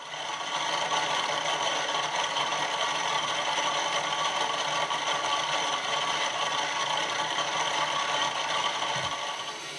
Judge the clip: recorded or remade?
remade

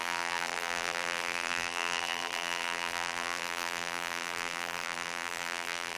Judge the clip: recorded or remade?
remade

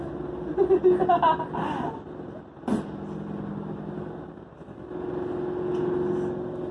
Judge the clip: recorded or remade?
recorded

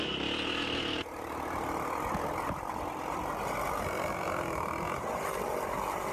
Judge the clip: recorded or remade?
recorded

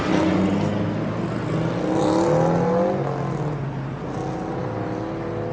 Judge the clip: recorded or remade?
recorded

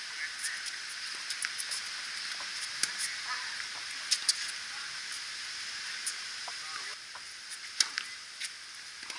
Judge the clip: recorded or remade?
recorded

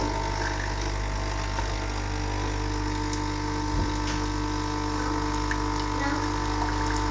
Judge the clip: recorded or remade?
recorded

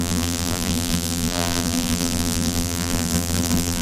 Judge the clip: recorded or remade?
remade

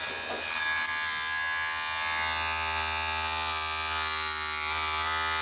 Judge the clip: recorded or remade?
recorded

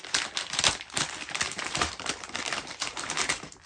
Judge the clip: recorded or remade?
remade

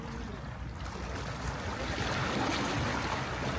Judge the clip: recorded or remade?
recorded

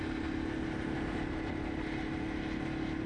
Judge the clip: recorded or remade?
recorded